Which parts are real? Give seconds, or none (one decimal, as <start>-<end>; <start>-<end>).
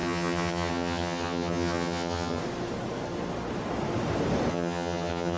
2.4-4.5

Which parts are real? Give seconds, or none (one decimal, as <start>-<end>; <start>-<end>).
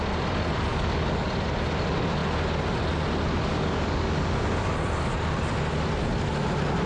0.0-0.7; 1.3-3.5; 4.7-6.9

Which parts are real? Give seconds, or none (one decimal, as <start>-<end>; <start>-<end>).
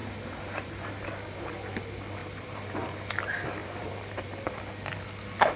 0.9-2.2; 3.1-3.6; 4.3-5.6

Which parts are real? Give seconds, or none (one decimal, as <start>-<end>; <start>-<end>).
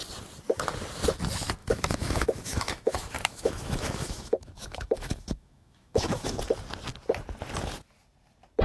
0.0-1.6; 6.3-8.6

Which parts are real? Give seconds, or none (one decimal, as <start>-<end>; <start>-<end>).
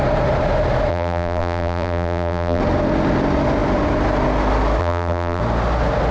0.0-0.9; 2.6-4.8; 5.4-6.1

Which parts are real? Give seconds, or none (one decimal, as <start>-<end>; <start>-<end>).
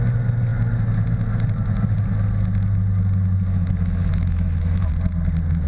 0.0-3.5; 4.9-5.7